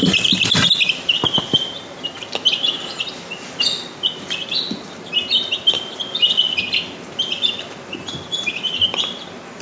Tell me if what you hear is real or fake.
real